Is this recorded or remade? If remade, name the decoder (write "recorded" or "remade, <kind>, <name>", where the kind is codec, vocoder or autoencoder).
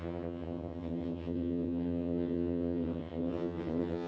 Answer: remade, vocoder, HiFi-GAN